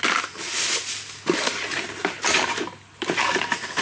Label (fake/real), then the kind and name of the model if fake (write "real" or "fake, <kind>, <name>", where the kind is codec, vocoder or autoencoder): real